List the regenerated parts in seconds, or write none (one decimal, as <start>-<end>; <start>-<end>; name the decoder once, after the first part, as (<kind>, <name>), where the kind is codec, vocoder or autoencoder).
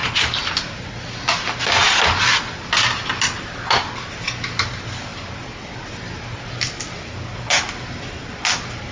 none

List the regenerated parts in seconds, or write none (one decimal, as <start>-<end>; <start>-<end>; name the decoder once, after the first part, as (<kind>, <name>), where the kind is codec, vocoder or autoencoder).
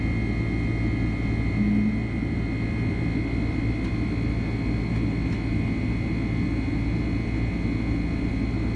none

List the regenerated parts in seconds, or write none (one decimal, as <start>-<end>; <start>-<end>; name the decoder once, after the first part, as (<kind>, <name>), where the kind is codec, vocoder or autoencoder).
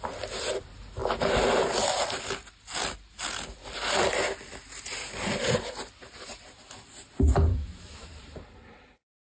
7.5-8.1 (autoencoder, DAC-VAE)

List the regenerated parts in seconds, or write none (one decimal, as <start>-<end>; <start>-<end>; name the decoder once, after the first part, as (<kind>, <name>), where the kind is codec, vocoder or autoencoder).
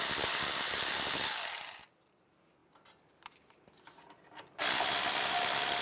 none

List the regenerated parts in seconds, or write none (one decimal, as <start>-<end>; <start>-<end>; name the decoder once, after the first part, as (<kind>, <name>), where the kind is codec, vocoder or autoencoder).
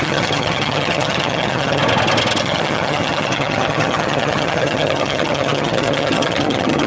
0.0-1.8 (vocoder, HiFi-GAN); 2.4-6.9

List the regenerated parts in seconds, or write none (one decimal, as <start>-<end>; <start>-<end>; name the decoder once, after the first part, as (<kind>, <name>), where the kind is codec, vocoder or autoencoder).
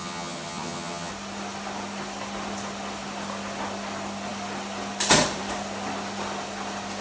0.0-1.1 (vocoder, HiFi-GAN)